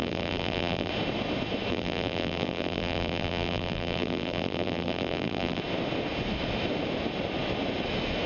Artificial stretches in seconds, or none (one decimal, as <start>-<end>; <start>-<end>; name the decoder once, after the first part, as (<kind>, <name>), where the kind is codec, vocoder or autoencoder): 0.0-0.9 (vocoder, BigVGAN v2); 1.7-5.6

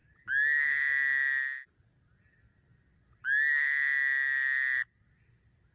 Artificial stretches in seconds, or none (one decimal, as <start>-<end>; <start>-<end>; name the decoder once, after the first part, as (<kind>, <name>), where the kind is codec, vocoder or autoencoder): none

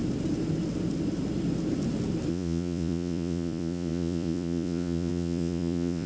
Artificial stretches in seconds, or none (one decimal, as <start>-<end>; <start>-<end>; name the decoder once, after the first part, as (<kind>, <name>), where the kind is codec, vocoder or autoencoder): 2.3-6.1 (vocoder, Vocos)

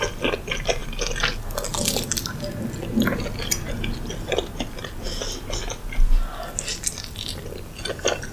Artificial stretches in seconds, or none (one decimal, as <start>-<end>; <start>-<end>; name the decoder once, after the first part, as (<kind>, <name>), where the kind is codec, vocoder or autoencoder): none